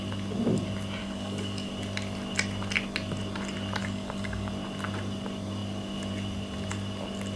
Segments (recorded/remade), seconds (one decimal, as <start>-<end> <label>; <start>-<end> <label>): 0.0-1.0 recorded; 1.0-1.7 remade; 1.7-3.8 recorded; 3.8-4.5 remade; 4.5-7.4 recorded